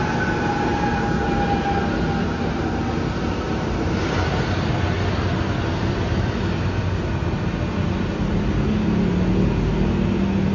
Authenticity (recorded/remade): recorded